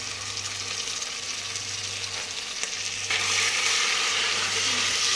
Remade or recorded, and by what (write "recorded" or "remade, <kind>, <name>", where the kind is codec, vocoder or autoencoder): recorded